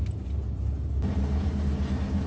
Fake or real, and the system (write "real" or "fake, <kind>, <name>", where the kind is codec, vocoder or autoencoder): real